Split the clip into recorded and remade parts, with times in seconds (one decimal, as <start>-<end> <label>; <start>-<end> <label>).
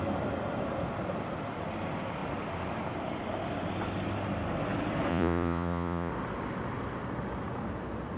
0.0-5.1 recorded; 5.1-6.1 remade; 6.1-8.2 recorded